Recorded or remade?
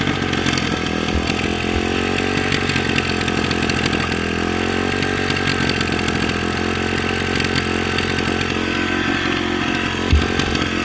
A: recorded